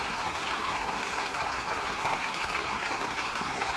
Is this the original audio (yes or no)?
no